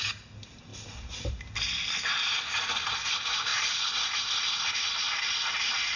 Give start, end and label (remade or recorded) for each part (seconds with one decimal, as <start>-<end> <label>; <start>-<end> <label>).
0.0-6.0 recorded